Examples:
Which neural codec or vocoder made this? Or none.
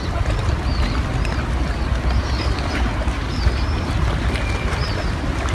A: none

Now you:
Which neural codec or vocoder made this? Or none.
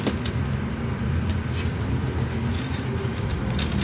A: none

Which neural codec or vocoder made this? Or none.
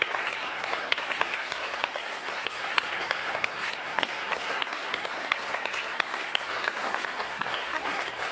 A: codec, SNAC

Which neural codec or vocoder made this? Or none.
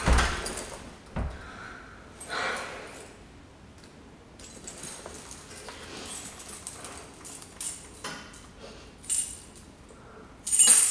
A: none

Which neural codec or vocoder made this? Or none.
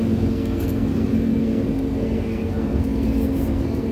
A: codec, SNAC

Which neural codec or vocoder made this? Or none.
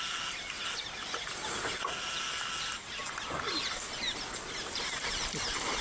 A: none